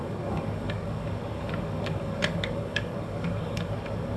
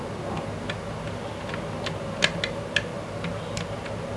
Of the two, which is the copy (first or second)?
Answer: first